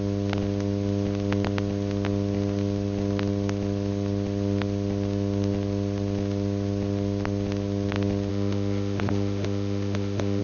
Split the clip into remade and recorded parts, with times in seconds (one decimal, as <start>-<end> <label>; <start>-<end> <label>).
0.0-8.3 recorded; 8.3-10.4 remade